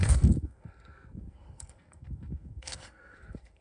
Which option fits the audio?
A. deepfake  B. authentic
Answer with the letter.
A